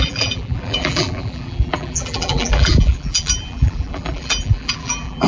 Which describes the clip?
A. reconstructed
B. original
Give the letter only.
A